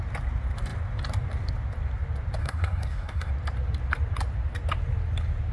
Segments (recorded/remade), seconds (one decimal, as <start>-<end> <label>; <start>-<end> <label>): 0.0-2.4 recorded; 2.4-3.3 remade; 3.3-5.5 recorded